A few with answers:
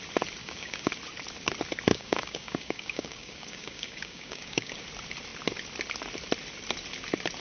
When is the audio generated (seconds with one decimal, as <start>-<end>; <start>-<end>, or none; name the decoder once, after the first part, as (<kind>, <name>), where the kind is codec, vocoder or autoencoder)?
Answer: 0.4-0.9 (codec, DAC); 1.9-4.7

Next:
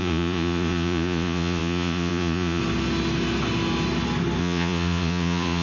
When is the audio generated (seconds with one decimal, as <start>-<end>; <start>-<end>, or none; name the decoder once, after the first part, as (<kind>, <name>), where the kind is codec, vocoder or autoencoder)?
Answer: 0.0-2.6 (vocoder, Vocos); 4.4-5.6

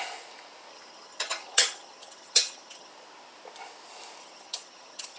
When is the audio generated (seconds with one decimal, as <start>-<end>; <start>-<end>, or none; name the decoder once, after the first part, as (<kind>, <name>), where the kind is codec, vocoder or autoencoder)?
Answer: 0.7-2.9 (vocoder, HiFi-GAN); 4.2-5.2

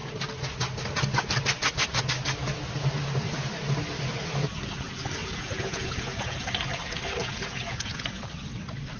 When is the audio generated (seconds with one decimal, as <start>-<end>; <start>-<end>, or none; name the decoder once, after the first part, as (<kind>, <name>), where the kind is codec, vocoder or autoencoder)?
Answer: 5.2-6.5 (vocoder, Vocos); 7.2-8.2

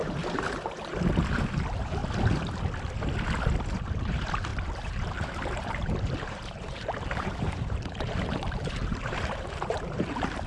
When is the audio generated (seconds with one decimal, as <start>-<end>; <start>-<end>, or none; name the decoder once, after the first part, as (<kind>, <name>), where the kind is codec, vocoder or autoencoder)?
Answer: 0.0-2.0 (vocoder, BigVGAN v2); 3.7-10.5